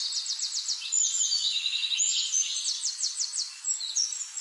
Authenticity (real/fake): fake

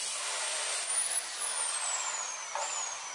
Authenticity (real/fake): real